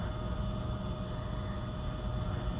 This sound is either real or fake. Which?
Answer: real